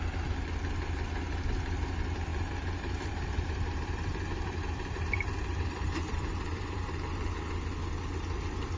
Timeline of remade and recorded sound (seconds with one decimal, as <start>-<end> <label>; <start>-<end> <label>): 0.0-2.3 recorded; 2.3-7.5 remade; 7.5-8.8 recorded